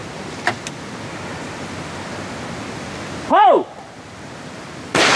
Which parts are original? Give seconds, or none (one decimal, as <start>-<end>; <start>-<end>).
0.5-5.2